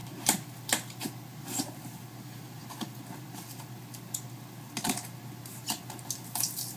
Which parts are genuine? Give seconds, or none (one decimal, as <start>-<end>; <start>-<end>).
2.0-6.8